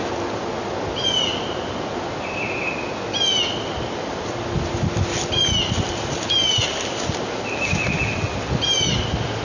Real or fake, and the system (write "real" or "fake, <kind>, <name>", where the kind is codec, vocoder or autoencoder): real